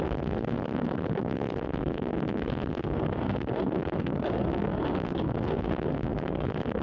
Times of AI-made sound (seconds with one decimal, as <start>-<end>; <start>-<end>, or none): 0.0-6.8